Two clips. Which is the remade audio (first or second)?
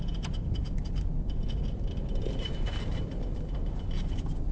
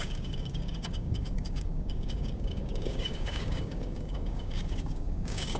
second